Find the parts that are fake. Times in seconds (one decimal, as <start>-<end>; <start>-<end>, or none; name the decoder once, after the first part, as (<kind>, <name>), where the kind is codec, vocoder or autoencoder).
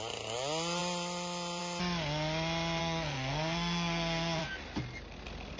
2.8-4.4 (codec, SNAC)